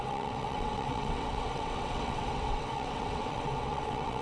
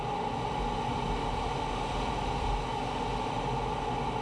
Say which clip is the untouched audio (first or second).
second